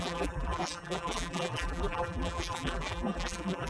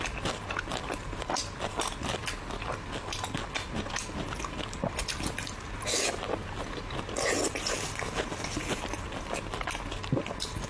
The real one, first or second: second